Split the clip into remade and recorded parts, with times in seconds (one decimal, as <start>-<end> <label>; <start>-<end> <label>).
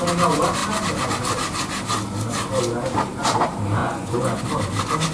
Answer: 0.0-3.8 recorded; 3.8-4.4 remade; 4.4-5.1 recorded